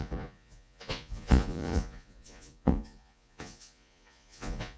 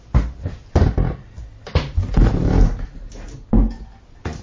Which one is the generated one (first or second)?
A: first